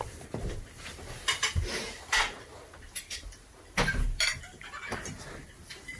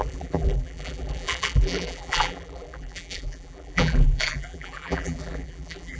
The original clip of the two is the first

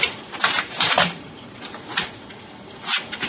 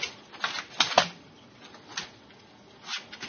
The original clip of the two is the second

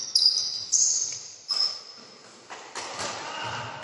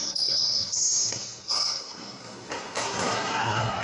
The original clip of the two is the first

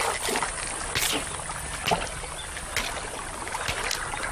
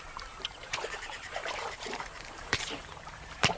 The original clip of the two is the first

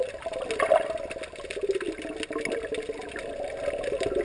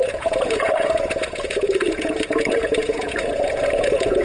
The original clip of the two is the first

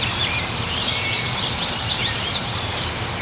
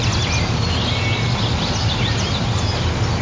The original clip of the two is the second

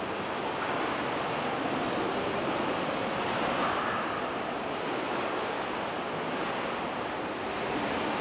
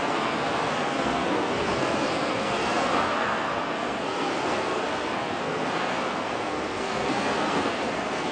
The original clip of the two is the first